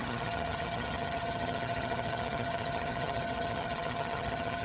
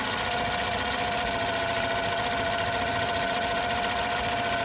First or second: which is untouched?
second